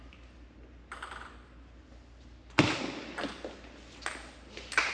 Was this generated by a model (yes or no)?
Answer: no